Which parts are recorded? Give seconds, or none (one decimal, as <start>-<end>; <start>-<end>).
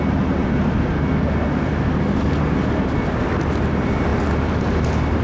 0.0-5.2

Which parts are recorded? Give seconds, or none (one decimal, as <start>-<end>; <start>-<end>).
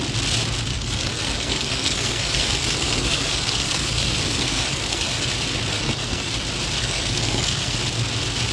0.0-0.7; 5.3-5.7; 6.3-6.8; 7.8-8.5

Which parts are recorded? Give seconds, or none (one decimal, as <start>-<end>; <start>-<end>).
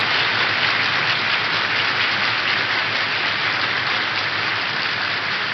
0.0-5.5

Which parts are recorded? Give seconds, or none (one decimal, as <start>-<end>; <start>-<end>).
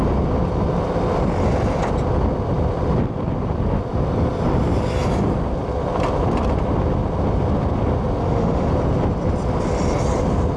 0.0-8.2; 8.7-10.6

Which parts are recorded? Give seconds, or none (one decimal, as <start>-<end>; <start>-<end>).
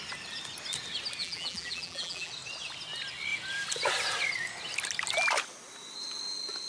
0.0-1.2; 2.3-6.7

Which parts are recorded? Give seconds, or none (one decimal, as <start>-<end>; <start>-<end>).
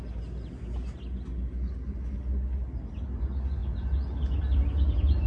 0.0-5.3